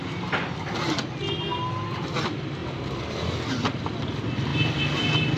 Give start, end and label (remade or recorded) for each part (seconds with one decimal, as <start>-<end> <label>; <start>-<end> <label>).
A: 0.0-5.4 recorded